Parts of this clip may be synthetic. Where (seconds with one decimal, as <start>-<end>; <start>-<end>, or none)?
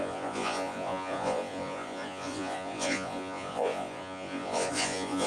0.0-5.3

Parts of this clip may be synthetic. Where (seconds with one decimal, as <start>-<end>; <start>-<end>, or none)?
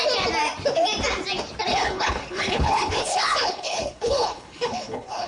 1.7-5.3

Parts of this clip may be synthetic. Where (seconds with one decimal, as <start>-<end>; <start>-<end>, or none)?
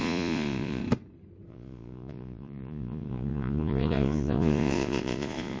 0.0-0.8; 1.5-5.6